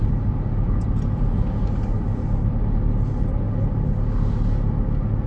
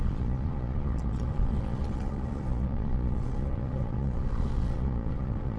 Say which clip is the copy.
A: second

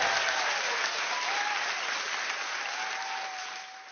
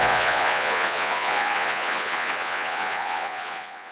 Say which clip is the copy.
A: second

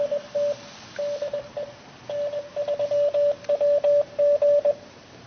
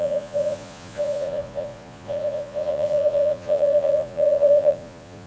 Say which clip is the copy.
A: second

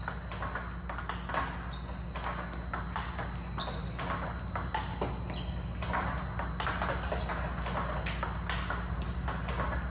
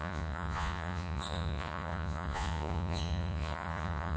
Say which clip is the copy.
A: second